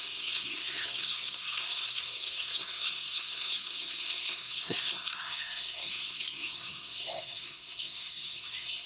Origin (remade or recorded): remade